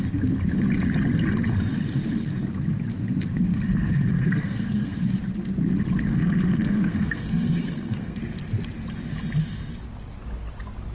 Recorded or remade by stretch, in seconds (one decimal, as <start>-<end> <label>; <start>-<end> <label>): 0.0-3.5 recorded; 3.5-5.0 remade; 5.0-6.1 recorded; 6.1-8.2 remade; 8.2-10.9 recorded